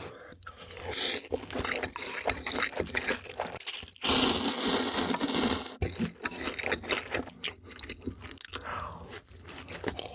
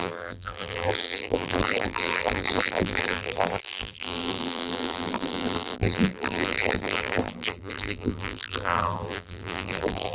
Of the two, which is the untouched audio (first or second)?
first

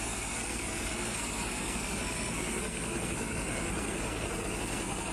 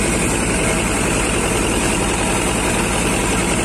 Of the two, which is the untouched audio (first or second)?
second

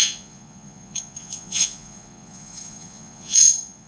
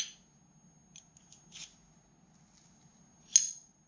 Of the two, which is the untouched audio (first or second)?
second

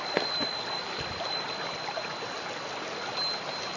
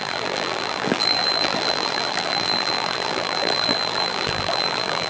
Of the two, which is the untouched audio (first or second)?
first